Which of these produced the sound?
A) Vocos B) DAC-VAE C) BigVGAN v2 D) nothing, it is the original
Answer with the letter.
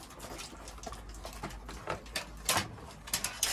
D